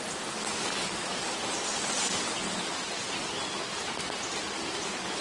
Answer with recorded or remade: recorded